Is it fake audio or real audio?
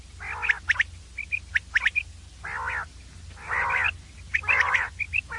real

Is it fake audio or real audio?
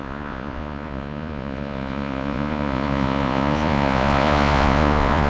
fake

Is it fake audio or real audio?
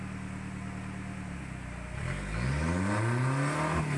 real